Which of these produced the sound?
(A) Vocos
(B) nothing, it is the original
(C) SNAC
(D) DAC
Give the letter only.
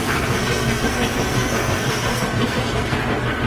C